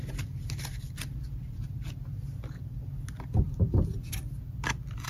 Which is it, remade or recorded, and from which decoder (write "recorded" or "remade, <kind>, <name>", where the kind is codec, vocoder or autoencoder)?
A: recorded